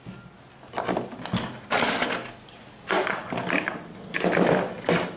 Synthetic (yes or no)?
no